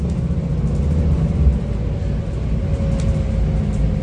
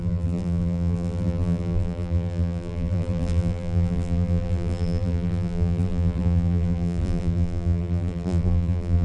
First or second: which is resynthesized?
second